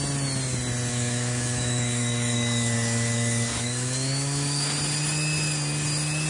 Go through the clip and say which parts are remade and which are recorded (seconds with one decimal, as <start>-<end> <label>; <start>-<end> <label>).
0.0-0.9 recorded; 0.9-4.7 remade; 4.7-6.3 recorded